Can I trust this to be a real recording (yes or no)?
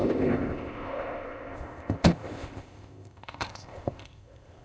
no